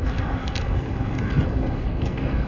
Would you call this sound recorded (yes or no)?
no